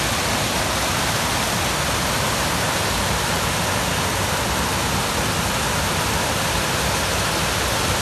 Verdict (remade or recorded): recorded